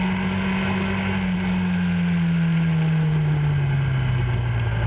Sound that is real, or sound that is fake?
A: real